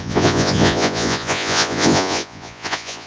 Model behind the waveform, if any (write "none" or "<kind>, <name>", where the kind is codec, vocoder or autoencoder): vocoder, Vocos